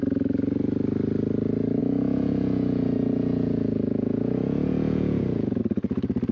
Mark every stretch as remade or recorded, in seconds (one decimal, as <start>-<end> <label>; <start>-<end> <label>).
0.0-1.8 recorded; 1.8-5.6 remade; 5.6-6.3 recorded